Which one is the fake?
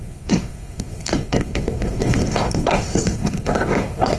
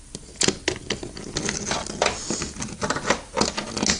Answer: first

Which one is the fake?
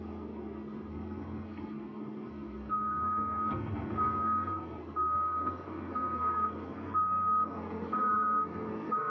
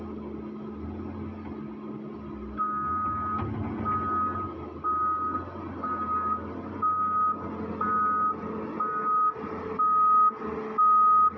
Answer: first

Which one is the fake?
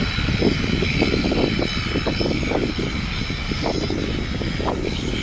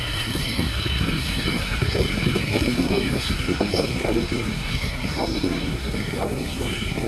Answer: second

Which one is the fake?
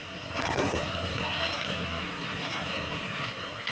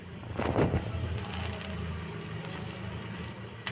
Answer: first